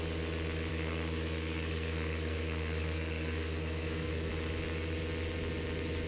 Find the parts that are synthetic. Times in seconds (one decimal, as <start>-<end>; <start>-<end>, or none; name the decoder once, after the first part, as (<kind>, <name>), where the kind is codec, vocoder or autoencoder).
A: 0.7-4.3 (codec, SNAC)